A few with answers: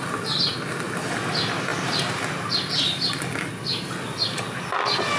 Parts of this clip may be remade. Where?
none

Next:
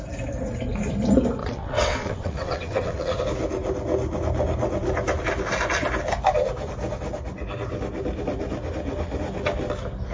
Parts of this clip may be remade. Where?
1.4-3.2

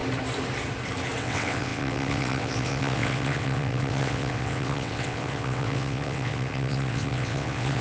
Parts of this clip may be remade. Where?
1.2-7.8